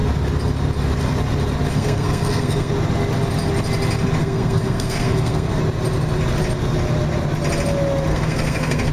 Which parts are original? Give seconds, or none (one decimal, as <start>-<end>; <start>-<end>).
0.0-1.7; 2.7-4.2; 5.6-8.1